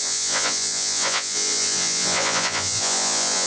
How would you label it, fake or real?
fake